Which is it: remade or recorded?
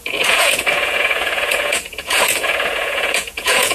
remade